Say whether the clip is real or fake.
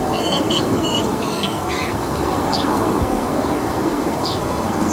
fake